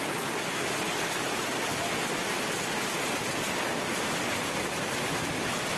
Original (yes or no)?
yes